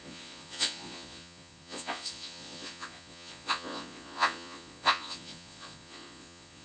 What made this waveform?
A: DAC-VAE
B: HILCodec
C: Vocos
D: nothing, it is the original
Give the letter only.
C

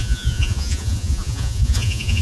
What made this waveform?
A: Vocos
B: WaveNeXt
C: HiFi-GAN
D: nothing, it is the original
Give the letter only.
A